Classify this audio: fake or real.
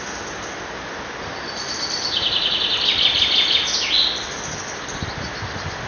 real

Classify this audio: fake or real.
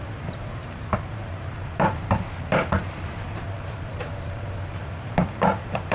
fake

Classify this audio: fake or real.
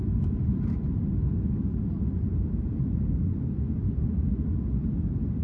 fake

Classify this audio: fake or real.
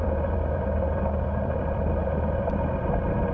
fake